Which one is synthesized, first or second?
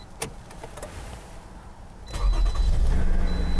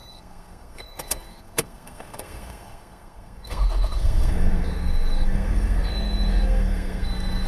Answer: second